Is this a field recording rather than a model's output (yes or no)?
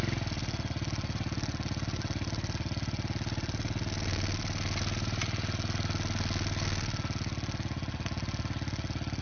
yes